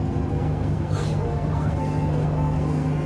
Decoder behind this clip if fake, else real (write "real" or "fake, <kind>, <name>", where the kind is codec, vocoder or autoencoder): fake, codec, SNAC